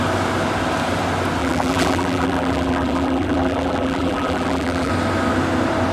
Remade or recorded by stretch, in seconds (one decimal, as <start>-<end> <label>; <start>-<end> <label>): 0.0-1.4 recorded; 1.4-4.9 remade; 4.9-5.9 recorded

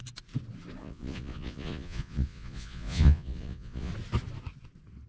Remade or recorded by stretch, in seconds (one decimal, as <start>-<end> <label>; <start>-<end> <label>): 0.0-0.8 recorded; 0.8-3.9 remade; 3.9-5.1 recorded

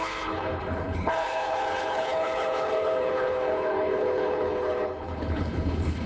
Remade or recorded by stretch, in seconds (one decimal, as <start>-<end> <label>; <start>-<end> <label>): 0.0-6.1 remade

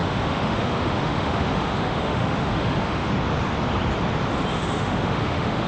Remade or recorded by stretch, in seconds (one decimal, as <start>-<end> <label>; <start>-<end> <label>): 0.0-3.1 remade; 3.1-4.5 recorded; 4.5-5.7 remade

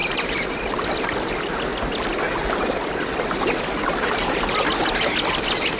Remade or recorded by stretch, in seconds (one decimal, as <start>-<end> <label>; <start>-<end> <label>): 0.0-0.9 remade; 0.9-5.8 recorded

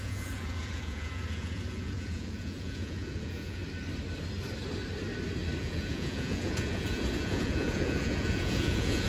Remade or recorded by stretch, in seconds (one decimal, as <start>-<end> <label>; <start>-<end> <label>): 0.0-3.6 remade; 3.6-5.6 recorded; 5.6-9.1 remade